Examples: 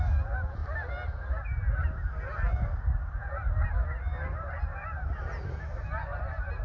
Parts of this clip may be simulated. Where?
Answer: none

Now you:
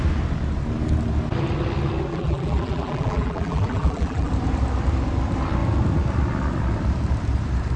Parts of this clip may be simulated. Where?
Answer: 2.1-4.3 (vocoder, BigVGAN v2)

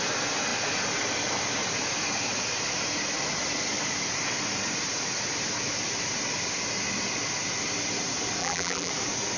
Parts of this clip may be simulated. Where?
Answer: 8.4-8.9 (vocoder, BigVGAN v2)

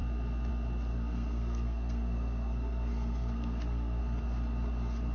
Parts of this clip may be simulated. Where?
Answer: 0.9-4.0 (codec, SNAC)

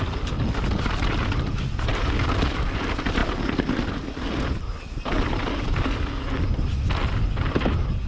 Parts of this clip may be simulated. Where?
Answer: none

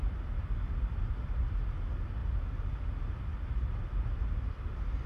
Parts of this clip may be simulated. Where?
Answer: none